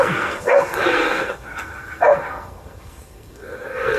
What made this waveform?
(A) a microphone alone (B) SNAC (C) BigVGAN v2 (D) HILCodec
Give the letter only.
B